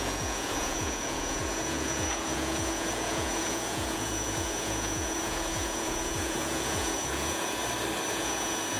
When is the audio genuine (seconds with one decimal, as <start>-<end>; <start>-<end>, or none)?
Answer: 7.6-8.1